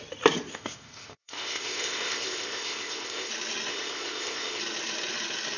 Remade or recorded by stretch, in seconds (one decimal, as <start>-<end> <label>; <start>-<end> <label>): 0.0-0.5 recorded; 0.5-3.3 remade; 3.3-3.7 recorded; 3.7-4.6 remade; 4.6-5.6 recorded